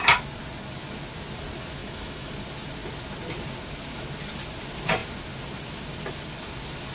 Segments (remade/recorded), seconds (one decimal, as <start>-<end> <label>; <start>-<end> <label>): 0.0-1.8 recorded; 1.8-2.3 remade; 2.3-6.9 recorded